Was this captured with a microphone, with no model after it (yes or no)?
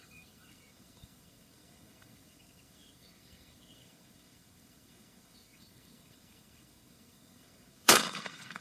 no